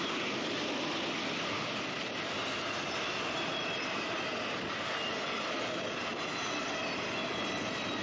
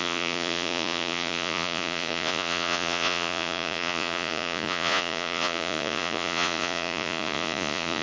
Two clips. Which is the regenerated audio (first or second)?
second